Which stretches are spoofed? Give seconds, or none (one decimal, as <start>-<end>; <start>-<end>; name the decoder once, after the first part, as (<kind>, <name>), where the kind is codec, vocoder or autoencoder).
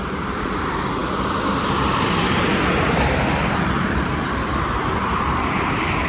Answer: 0.0-6.1 (vocoder, BigVGAN v2)